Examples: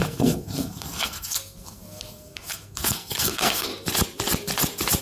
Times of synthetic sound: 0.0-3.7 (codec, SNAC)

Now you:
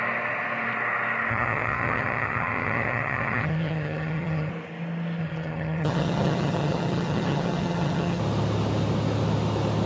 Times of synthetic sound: 1.3-4.5 (vocoder, HiFi-GAN); 5.2-8.2

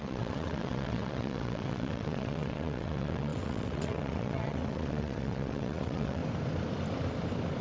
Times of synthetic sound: 0.0-6.2 (vocoder, WaveNeXt)

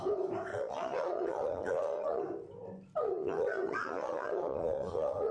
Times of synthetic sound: 0.5-2.2 (vocoder, Vocos); 3.0-5.3

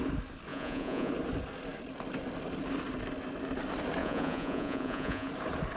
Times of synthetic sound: 0.5-1.1 (vocoder, Vocos); 4.0-5.3

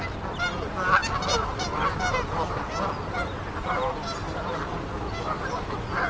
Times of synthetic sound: none

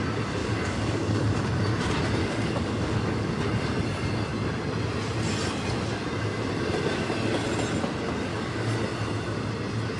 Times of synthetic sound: 0.4-1.6 (codec, DAC); 2.2-3.3; 8.3-8.8